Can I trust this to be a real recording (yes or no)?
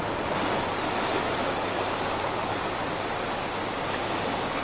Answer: yes